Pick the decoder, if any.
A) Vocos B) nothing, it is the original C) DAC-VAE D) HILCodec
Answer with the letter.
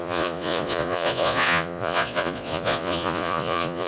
A